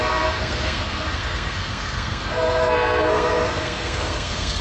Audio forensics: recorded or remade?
remade